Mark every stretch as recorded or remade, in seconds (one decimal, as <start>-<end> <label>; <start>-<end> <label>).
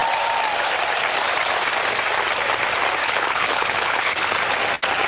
0.0-3.0 recorded; 3.0-4.4 remade; 4.4-5.1 recorded